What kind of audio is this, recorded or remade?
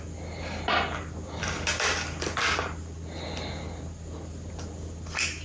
recorded